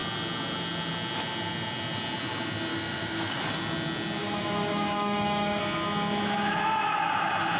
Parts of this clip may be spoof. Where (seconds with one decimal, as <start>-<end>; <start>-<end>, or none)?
2.7-3.5; 4.2-5.6